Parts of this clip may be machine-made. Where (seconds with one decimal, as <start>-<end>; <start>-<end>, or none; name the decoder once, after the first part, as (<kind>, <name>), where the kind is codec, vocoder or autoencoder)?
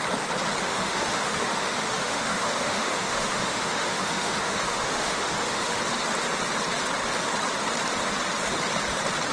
0.7-5.8 (autoencoder, DAC-VAE)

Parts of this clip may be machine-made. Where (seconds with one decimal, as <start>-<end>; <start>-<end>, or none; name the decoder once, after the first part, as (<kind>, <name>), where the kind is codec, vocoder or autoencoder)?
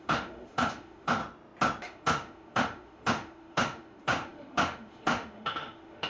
0.0-1.2 (autoencoder, DAC-VAE); 1.8-6.1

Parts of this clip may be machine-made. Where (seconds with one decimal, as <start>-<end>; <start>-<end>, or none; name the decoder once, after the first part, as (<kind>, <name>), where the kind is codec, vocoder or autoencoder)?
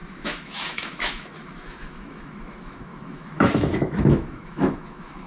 0.0-5.3 (autoencoder, DAC-VAE)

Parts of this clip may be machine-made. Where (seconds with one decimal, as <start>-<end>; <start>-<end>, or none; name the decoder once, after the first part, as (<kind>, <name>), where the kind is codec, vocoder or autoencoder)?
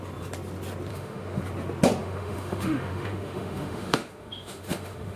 0.9-1.4 (autoencoder, DAC-VAE); 2.0-5.2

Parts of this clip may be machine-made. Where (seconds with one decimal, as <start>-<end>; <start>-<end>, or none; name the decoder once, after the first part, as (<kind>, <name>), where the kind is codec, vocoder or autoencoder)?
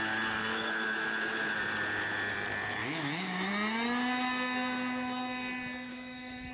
0.5-1.6 (autoencoder, DAC-VAE); 2.8-3.5; 5.9-6.5